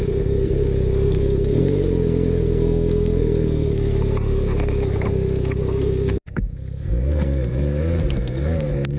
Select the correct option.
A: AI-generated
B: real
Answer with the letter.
A